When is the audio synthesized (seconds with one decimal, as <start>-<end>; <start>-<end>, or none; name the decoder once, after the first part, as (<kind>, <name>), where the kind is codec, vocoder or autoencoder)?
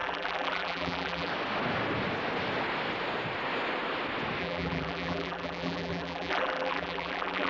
0.0-1.3 (vocoder, BigVGAN v2); 4.4-7.5